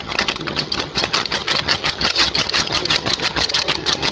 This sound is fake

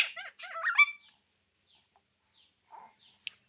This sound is real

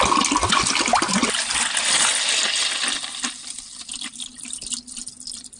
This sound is real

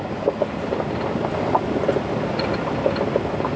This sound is real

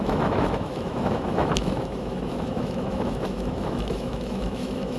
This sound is fake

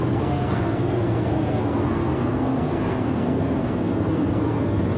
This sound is fake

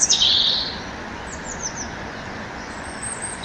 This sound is fake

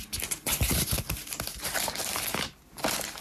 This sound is real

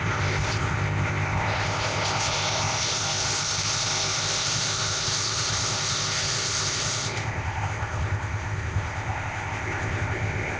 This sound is fake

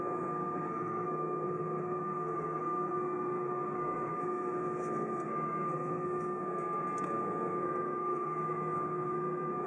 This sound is fake